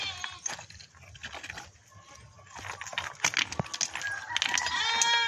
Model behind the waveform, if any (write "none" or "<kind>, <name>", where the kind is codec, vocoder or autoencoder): none